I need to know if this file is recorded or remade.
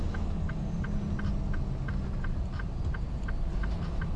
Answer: recorded